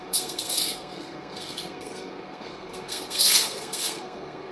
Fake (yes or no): yes